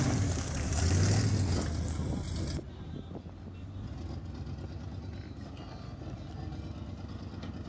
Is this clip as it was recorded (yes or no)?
yes